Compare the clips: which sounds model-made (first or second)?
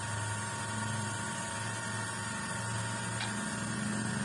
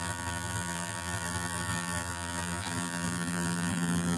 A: second